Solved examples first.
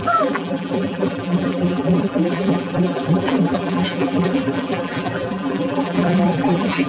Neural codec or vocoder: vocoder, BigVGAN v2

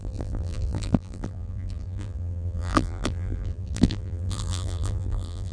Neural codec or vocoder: vocoder, BigVGAN v2